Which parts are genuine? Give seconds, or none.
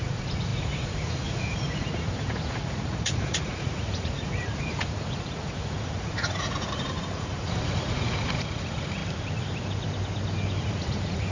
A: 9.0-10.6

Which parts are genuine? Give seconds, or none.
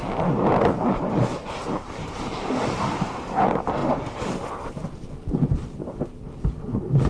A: 0.0-0.8; 3.8-4.7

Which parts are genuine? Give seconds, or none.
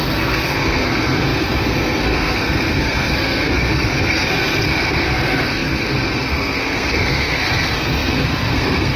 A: none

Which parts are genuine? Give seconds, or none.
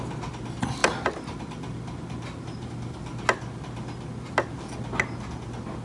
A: 0.0-5.8